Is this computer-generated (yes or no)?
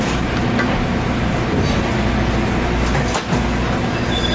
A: no